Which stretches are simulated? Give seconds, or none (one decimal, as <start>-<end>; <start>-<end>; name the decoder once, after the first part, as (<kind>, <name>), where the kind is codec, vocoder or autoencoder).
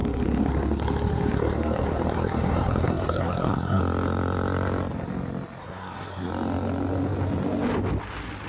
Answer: 0.0-3.8 (codec, SNAC); 5.6-6.3